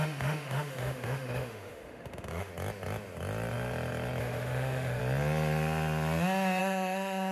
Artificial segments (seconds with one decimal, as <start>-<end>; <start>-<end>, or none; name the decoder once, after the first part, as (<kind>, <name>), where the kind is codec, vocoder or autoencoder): 0.0-2.5 (autoencoder, DAC-VAE); 4.2-5.0; 6.6-7.3